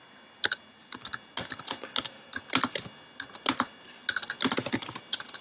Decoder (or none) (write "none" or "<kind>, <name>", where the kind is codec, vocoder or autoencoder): none